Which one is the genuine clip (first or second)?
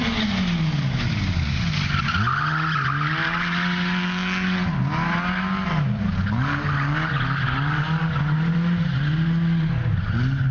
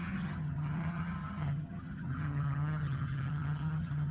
first